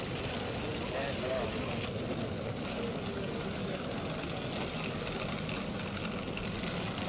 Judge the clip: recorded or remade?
recorded